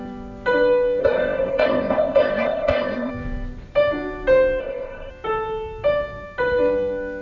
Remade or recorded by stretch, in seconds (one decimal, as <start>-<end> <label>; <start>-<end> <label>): 0.0-1.0 recorded; 1.0-3.1 remade; 3.1-4.6 recorded; 4.6-5.1 remade; 5.1-7.2 recorded